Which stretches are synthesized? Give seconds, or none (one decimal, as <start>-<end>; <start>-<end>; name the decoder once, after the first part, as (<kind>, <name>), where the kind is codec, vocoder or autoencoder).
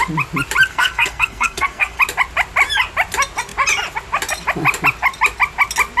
0.7-2.0 (codec, SNAC)